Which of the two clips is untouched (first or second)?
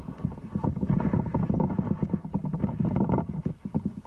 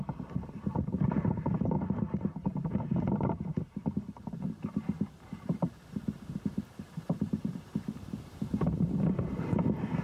first